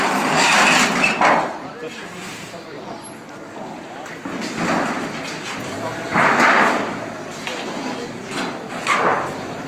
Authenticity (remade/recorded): recorded